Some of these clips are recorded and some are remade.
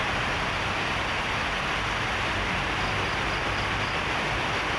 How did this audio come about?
recorded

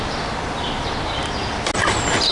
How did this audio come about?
recorded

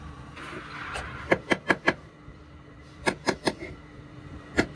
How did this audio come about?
remade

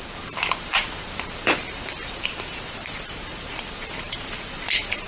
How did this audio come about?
remade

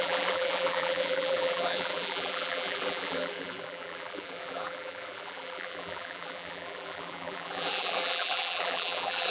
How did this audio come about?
remade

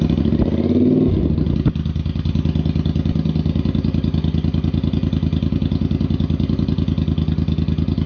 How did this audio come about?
recorded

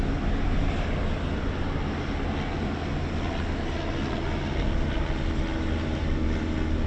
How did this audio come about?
recorded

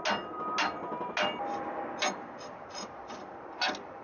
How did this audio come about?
recorded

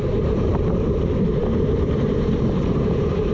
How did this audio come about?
remade